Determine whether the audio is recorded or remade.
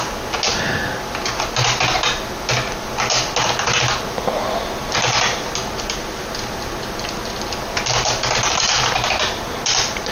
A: recorded